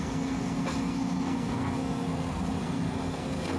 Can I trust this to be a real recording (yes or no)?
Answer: no